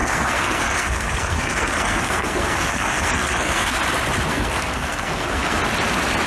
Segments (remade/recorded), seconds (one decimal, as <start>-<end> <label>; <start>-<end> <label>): 0.0-3.8 remade; 3.8-4.3 recorded; 4.3-5.6 remade; 5.6-6.3 recorded

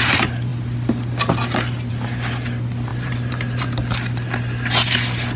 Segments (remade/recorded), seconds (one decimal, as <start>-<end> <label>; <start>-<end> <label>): 0.0-2.9 recorded; 2.9-3.7 remade; 3.7-5.4 recorded

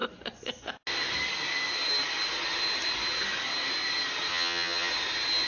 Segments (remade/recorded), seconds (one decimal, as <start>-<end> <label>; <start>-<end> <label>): 0.0-4.3 recorded; 4.3-4.9 remade; 4.9-5.5 recorded

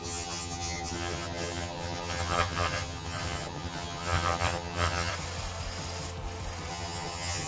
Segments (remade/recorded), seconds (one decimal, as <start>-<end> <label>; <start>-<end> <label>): 0.0-5.1 remade; 5.1-6.7 recorded; 6.7-7.5 remade

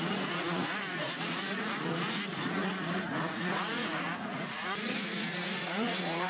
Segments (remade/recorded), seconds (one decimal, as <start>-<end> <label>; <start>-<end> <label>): 0.0-6.3 remade

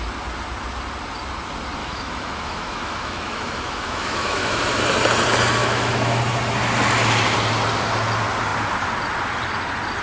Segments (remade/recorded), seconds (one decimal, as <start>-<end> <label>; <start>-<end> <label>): 0.0-1.8 recorded; 1.8-4.6 remade; 4.6-5.6 recorded; 5.6-6.2 remade; 6.2-10.0 recorded